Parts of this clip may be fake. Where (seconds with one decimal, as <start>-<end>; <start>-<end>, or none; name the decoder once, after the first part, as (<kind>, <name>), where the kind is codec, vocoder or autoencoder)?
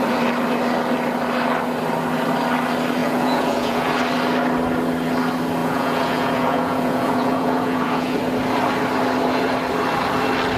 3.0-3.9 (vocoder, Vocos); 5.6-8.2